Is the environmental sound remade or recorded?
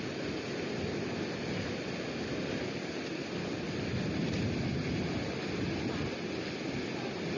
recorded